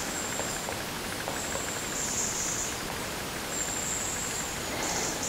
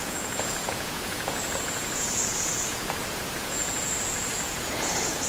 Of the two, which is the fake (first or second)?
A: second